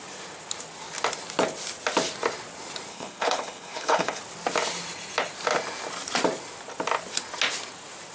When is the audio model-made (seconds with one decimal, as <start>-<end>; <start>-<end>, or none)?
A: 2.9-4.2

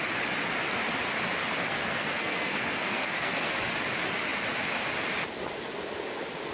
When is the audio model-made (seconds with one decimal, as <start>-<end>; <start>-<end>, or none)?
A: 1.6-3.5

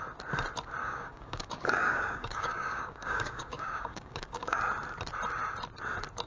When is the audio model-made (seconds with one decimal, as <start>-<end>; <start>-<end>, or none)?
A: 0.8-4.6

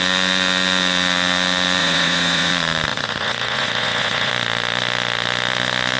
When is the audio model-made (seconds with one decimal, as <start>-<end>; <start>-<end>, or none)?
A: 1.8-2.5; 2.9-4.3

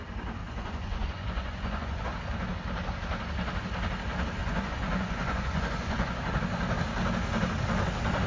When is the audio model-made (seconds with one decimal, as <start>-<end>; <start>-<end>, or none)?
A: 0.4-2.0; 4.4-6.3

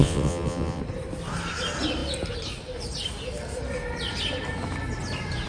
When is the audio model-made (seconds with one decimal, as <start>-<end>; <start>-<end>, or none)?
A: 0.0-0.8

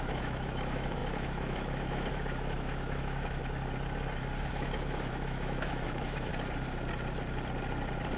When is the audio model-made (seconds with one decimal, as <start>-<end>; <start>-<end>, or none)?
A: 0.0-3.4; 4.5-6.3